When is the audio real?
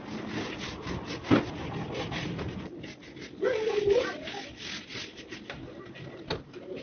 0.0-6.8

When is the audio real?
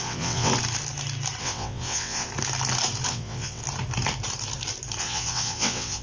0.5-1.4; 2.3-3.1; 3.6-5.0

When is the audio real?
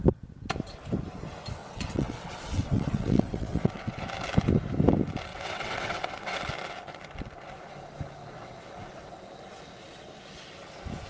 0.0-1.6; 4.0-5.3; 6.4-8.2; 8.8-11.1